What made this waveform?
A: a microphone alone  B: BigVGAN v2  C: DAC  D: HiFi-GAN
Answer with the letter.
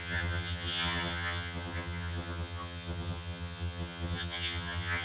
D